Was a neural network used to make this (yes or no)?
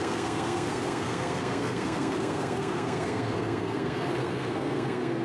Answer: yes